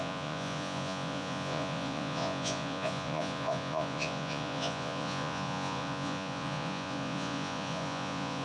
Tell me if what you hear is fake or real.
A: fake